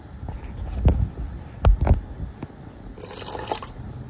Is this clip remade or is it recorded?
recorded